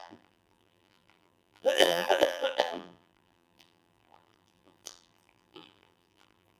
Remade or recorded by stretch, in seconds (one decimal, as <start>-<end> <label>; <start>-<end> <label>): 0.0-6.6 remade